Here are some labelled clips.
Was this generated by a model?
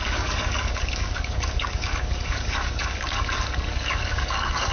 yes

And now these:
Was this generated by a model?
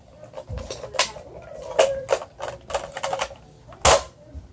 no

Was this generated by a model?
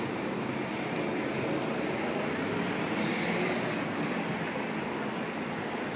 no